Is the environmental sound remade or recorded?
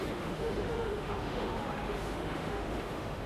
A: remade